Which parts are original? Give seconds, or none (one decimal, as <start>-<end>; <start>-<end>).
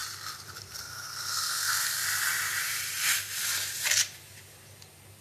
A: 0.0-0.8; 2.0-5.2